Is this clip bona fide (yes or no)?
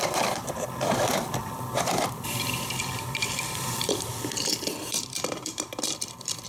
no